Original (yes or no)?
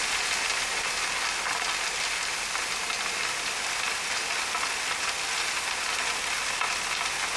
yes